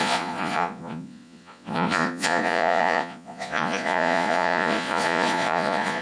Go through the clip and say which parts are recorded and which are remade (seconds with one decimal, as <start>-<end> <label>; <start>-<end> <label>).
0.0-6.0 remade